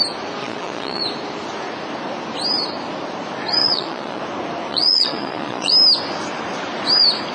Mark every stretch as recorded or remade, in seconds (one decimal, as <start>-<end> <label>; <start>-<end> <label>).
0.0-0.4 recorded; 0.4-1.0 remade; 1.0-3.6 recorded; 3.6-4.2 remade; 4.2-4.7 recorded; 4.7-5.7 remade; 5.7-7.3 recorded